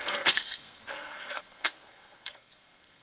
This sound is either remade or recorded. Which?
remade